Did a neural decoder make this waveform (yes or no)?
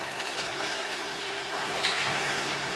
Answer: yes